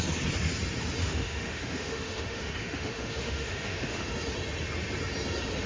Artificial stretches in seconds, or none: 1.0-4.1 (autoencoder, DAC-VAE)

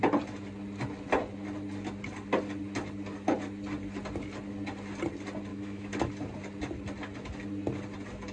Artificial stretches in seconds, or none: 5.5-6.1 (autoencoder, DAC-VAE)

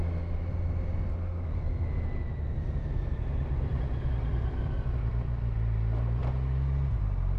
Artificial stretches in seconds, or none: none

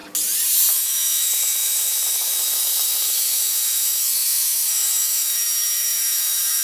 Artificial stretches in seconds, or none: 0.7-6.6 (autoencoder, DAC-VAE)

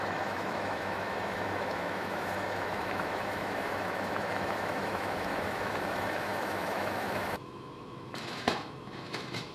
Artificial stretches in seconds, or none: 0.0-9.5 (autoencoder, DAC-VAE)

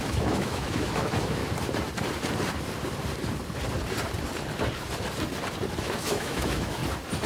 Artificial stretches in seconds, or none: 0.0-1.4 (autoencoder, DAC-VAE); 5.8-6.8

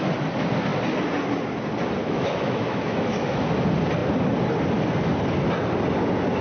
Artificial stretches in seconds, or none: 2.0-3.5 (autoencoder, DAC-VAE)